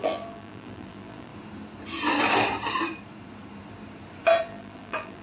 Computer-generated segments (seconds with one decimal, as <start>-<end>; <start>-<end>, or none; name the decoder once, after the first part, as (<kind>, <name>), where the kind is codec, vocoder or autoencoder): 0.0-1.3 (vocoder, BigVGAN v2); 4.4-5.2